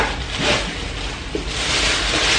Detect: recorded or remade recorded